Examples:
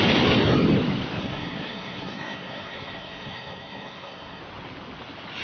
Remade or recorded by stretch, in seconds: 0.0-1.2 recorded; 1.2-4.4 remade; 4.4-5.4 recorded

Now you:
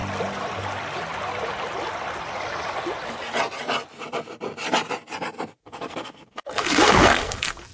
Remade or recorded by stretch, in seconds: 0.0-5.6 recorded; 5.6-7.7 remade

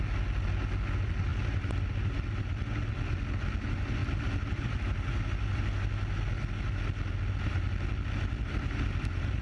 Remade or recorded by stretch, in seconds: 0.0-9.4 recorded